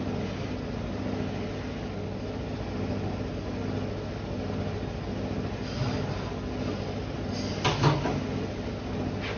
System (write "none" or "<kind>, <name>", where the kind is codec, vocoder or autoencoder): none